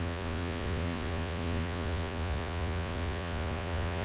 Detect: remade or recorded remade